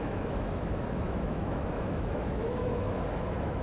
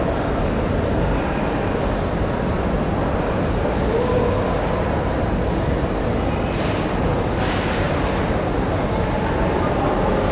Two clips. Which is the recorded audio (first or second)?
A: second